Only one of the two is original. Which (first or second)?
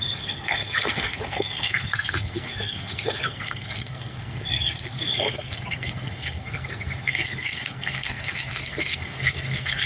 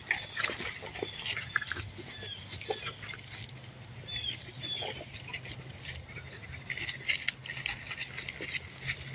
second